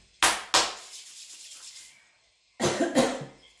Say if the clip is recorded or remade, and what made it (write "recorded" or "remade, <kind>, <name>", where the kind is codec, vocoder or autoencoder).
recorded